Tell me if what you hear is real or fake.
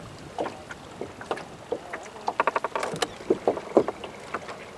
real